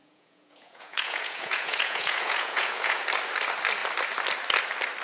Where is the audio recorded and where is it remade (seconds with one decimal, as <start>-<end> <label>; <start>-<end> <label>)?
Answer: 0.0-3.0 remade; 3.0-5.0 recorded